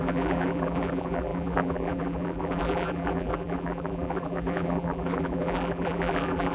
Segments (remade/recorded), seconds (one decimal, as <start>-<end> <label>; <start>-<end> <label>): 0.0-6.5 remade